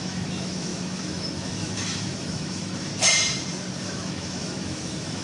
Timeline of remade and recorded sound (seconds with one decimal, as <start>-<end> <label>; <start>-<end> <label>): 0.0-2.9 remade; 2.9-3.8 recorded; 3.8-5.2 remade